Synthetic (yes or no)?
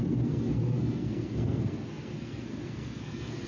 yes